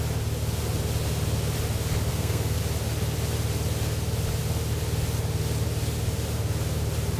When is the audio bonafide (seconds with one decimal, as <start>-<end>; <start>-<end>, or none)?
0.0-2.1; 2.6-7.2